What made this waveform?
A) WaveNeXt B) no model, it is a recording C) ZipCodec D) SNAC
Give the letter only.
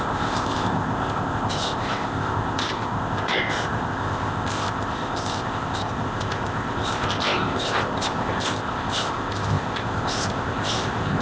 C